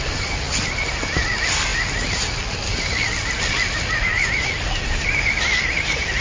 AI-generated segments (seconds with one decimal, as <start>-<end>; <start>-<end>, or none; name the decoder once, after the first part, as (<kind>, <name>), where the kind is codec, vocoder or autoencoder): none